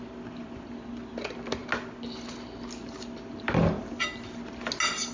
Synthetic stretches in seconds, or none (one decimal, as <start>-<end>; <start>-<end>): none